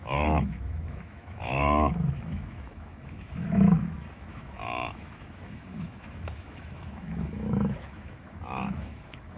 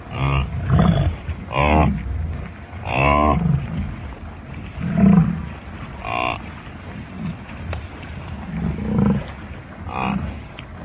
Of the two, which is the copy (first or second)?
first